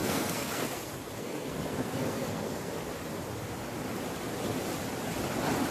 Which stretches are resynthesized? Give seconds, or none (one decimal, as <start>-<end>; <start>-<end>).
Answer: 0.0-2.7